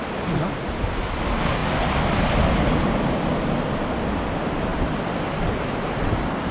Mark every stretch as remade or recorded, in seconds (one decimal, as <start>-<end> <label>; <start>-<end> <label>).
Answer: 0.0-6.5 recorded